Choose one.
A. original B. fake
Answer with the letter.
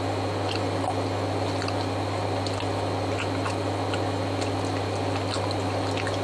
A